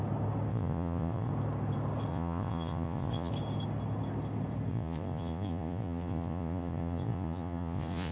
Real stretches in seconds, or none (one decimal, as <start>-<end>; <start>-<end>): 0.0-0.5; 1.3-2.1; 3.3-4.7